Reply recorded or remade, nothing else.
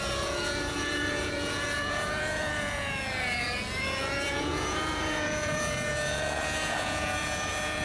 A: remade